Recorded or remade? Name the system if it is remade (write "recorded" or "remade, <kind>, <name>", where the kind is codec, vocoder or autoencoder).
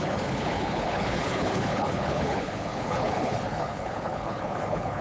remade, codec, HILCodec